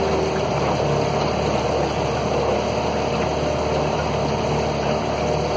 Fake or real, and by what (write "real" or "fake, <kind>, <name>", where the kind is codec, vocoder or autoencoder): real